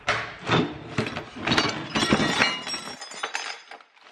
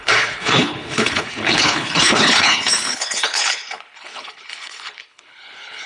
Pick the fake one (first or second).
second